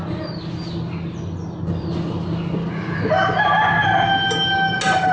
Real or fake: real